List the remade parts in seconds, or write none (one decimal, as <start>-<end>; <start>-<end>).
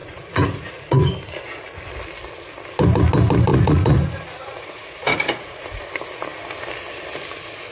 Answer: 0.0-1.1; 3.5-5.8